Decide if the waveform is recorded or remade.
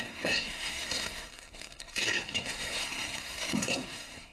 remade